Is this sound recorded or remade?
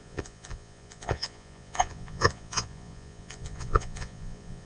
remade